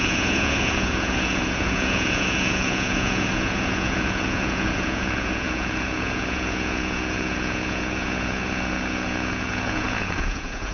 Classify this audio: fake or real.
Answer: fake